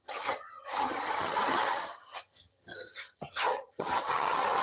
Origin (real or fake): fake